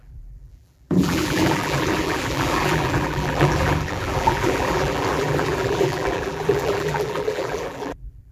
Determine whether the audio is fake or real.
fake